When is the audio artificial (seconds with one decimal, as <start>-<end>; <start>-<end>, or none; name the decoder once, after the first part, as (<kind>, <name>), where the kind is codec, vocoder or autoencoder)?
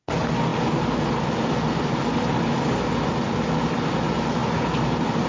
none